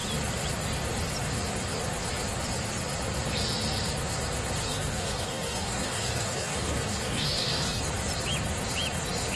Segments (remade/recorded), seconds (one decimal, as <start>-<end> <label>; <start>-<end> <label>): 0.0-4.7 recorded; 4.7-7.8 remade; 7.8-9.4 recorded